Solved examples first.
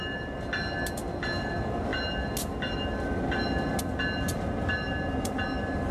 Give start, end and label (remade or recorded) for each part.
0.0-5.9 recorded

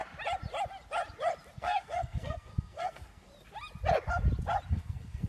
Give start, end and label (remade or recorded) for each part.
0.0-1.6 recorded; 1.6-3.3 remade; 3.3-4.7 recorded; 4.7-5.3 remade